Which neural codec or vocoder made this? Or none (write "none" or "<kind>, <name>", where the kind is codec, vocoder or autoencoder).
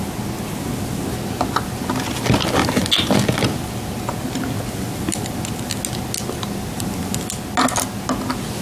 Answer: none